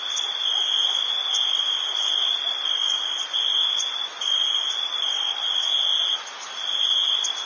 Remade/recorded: recorded